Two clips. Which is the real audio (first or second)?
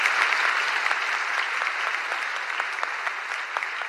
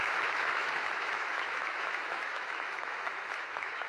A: first